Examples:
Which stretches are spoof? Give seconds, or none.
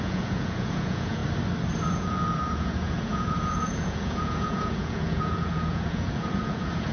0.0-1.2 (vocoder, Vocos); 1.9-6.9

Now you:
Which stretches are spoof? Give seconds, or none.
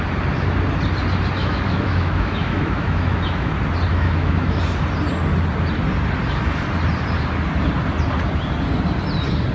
1.4-3.5 (autoencoder, DAC-VAE); 3.9-4.6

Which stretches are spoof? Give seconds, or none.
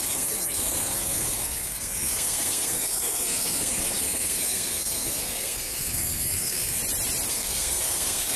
0.0-6.8 (codec, SNAC); 7.3-8.4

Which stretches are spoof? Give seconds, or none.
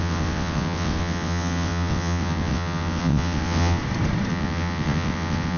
0.0-3.8 (vocoder, WaveNeXt); 4.3-5.6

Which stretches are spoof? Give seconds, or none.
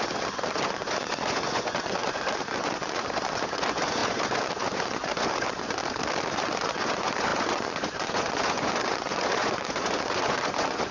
0.0-5.8 (vocoder, Vocos); 6.3-10.9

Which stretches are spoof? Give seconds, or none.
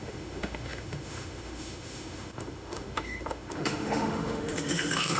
0.0-5.2 (autoencoder, DAC-VAE)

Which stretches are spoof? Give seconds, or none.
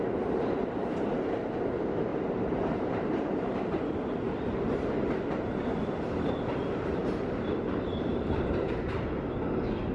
2.1-3.7 (vocoder, BigVGAN v2); 7.0-8.7